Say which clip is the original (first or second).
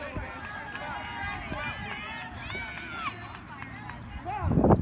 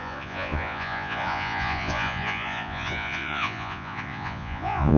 first